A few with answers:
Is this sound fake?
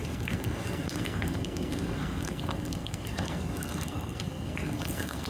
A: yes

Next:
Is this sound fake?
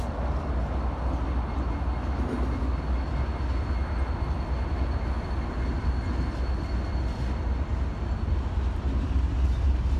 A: no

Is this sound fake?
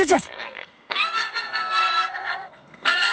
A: yes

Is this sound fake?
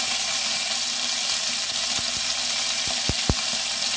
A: no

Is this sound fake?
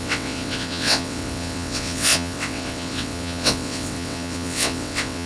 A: yes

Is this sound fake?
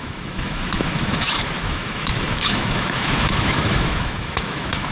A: yes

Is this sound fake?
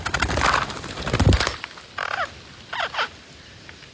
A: no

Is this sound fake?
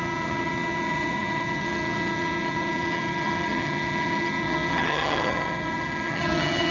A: yes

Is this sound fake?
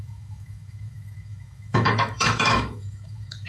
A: yes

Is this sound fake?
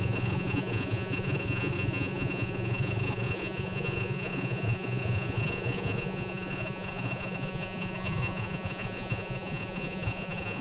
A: yes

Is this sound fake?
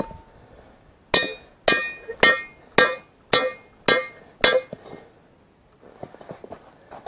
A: no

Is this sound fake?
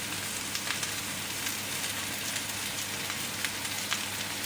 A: no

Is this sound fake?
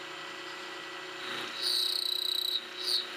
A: no